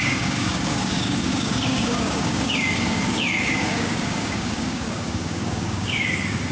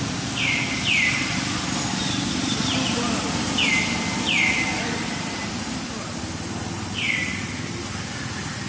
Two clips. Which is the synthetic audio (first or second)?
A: first